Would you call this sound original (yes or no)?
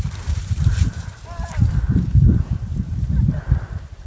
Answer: no